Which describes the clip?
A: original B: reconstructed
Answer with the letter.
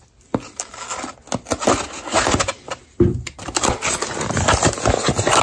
A